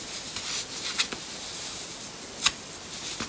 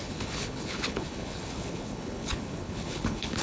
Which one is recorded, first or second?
first